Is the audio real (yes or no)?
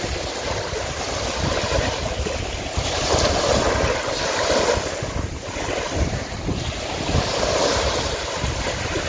yes